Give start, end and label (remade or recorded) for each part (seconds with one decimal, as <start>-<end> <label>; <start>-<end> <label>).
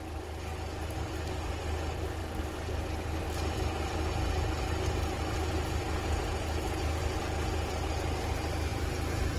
0.0-9.4 recorded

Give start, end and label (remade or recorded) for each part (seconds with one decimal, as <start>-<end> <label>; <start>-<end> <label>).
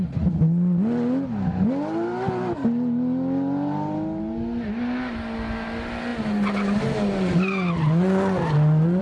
0.0-9.0 recorded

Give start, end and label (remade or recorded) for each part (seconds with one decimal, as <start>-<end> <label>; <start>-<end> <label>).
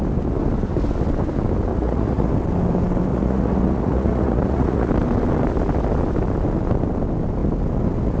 0.0-1.7 recorded; 1.7-2.3 remade; 2.3-3.1 recorded; 3.1-4.9 remade; 4.9-8.2 recorded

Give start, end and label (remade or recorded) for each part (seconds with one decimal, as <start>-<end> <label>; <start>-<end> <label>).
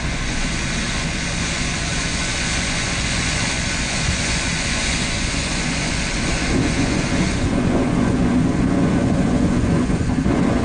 0.0-10.6 remade